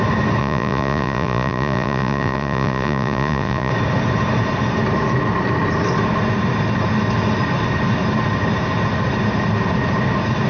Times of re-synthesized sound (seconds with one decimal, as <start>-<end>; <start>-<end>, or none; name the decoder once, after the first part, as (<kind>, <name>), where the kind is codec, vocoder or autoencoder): 0.4-3.7 (vocoder, Vocos)